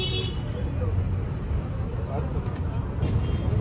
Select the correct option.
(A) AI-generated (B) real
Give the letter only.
B